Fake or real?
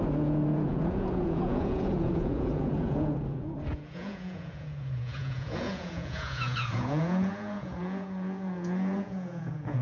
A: fake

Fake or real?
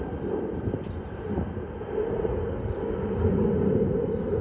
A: real